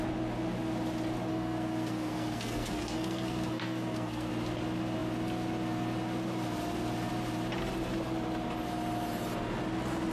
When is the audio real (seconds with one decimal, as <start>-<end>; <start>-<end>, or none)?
0.0-1.3; 4.3-10.1